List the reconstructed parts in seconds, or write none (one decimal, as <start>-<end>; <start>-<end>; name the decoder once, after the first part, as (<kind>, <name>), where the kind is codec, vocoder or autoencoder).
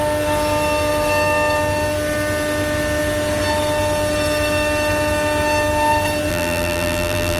6.3-7.4 (vocoder, BigVGAN v2)